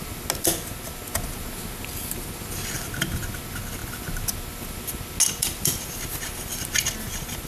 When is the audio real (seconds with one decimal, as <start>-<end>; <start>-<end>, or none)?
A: 0.0-7.5